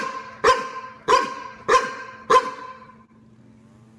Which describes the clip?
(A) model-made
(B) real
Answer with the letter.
B